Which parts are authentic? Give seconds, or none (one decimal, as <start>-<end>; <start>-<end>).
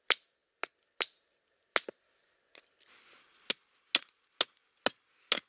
0.0-5.5